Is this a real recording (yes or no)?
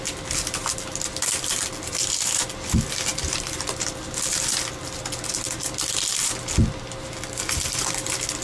yes